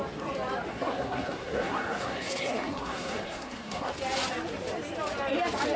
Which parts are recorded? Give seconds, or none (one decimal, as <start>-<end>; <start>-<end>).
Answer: 0.0-0.7; 3.9-5.8